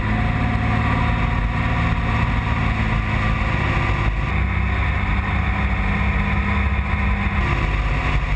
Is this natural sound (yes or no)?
yes